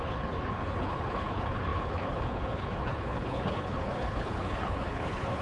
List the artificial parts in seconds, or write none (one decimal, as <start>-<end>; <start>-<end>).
0.0-5.4